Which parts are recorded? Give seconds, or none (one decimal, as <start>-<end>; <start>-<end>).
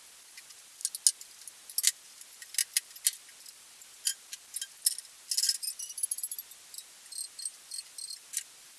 0.0-8.8